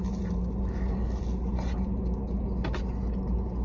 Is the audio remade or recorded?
recorded